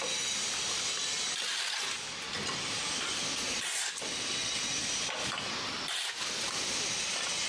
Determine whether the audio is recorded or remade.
recorded